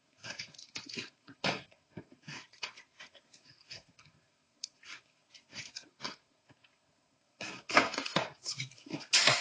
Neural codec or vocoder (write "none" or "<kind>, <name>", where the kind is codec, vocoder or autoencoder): codec, SNAC